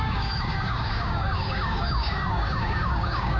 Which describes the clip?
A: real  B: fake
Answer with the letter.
B